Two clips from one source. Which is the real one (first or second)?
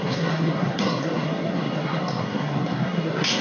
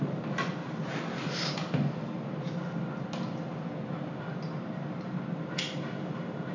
second